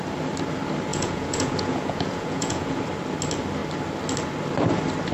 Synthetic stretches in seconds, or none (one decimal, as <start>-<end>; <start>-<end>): 0.9-2.8